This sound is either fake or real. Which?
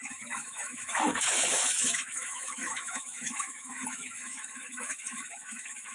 fake